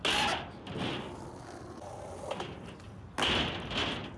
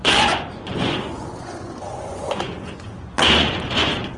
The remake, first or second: second